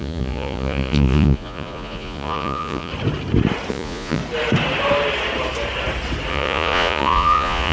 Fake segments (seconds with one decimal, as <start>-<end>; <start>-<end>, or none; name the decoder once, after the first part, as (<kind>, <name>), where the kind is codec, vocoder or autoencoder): 0.0-2.9 (vocoder, Vocos); 3.7-4.2; 6.3-7.7